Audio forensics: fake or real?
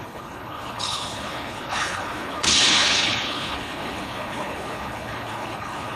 fake